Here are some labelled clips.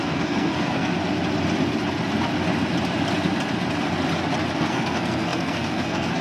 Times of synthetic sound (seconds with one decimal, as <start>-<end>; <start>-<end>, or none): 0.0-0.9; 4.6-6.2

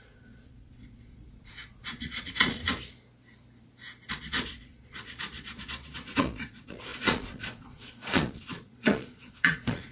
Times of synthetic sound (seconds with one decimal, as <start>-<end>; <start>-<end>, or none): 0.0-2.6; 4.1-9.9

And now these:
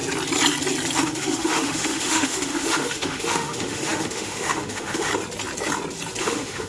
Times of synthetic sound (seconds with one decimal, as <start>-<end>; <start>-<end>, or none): 1.0-5.1; 6.2-6.7